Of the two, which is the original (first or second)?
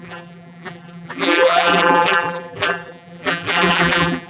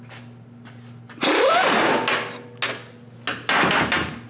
second